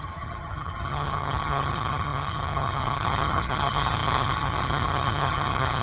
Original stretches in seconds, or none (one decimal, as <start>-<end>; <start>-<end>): none